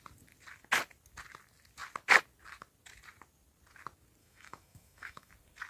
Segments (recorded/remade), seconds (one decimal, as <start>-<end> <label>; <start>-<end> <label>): 0.0-4.2 recorded; 4.2-5.3 remade; 5.3-5.7 recorded